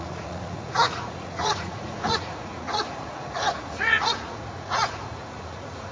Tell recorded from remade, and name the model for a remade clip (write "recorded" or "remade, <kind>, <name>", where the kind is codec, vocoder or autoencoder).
remade, vocoder, Vocos